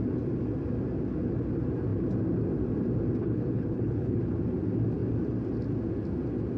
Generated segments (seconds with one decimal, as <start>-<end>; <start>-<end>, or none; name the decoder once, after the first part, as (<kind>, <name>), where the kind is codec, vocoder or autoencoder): 3.2-4.2 (codec, HILCodec)